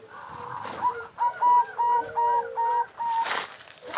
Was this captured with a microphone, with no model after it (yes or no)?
yes